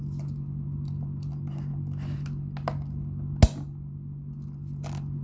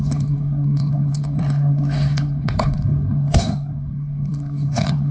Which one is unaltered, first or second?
first